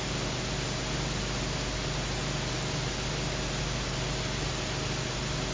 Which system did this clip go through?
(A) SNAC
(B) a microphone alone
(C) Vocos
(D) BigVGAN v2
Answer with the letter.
B